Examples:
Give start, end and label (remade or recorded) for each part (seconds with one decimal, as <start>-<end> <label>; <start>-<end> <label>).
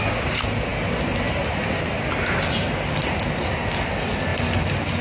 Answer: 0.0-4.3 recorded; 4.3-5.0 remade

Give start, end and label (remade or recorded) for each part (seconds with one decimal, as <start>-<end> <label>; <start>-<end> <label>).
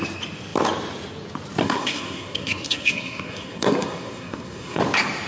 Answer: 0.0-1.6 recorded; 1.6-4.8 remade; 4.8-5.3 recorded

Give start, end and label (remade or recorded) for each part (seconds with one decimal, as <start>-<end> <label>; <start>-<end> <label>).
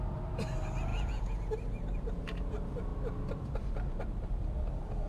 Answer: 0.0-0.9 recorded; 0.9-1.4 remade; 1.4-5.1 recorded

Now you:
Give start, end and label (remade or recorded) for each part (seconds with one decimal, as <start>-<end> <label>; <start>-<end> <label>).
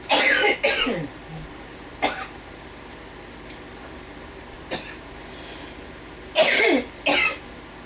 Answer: 0.0-7.9 recorded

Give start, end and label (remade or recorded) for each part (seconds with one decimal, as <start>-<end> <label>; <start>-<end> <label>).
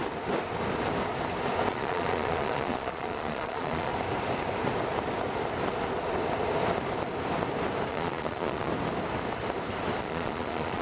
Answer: 0.0-1.7 recorded; 1.7-3.9 remade; 3.9-7.9 recorded; 7.9-8.7 remade; 8.7-10.0 recorded; 10.0-10.8 remade